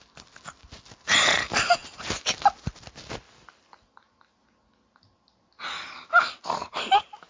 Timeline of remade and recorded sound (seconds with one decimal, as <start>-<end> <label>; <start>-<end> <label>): 0.0-7.3 recorded